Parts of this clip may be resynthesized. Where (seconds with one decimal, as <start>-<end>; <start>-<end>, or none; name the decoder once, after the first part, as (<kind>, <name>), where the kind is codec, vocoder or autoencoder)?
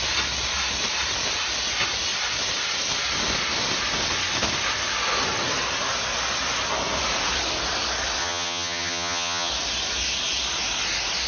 8.2-9.5 (vocoder, HiFi-GAN)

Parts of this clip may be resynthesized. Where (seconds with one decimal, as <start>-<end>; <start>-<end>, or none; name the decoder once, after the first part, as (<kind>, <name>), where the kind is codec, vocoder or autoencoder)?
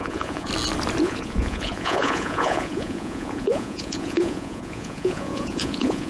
0.0-0.5 (vocoder, Vocos); 1.0-6.1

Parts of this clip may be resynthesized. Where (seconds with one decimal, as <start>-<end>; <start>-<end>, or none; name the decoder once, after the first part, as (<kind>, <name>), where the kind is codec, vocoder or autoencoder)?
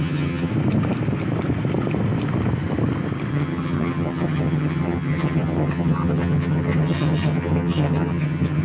0.0-0.5 (vocoder, HiFi-GAN); 3.3-8.6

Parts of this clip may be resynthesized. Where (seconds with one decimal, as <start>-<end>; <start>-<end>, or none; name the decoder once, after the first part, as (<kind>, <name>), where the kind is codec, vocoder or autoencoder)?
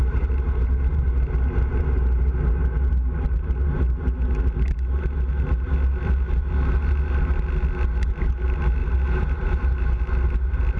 0.0-1.2 (vocoder, BigVGAN v2); 8.8-10.0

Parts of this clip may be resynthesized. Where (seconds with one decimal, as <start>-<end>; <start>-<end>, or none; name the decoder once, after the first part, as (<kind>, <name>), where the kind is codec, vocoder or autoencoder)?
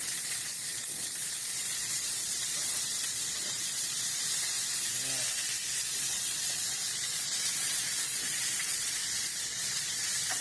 0.0-4.6 (vocoder, Vocos); 5.9-10.4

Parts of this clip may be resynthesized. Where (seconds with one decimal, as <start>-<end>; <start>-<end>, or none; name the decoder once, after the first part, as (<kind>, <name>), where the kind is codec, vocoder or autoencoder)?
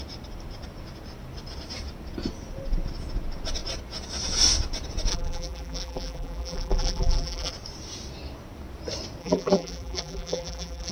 5.1-7.5 (vocoder, BigVGAN v2); 9.2-10.9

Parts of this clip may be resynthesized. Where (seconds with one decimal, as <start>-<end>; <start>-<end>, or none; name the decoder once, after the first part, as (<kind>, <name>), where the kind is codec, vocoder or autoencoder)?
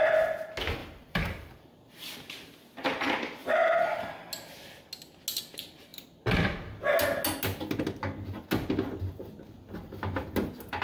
0.8-2.1 (vocoder, BigVGAN v2); 3.4-4.1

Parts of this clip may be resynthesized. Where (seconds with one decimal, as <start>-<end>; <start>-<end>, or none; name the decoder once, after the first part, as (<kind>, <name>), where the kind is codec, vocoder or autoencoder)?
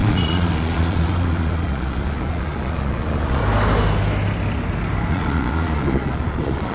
0.0-3.4 (vocoder, Vocos); 5.1-6.7